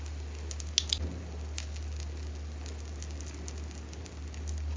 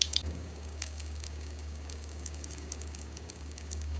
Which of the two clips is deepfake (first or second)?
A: second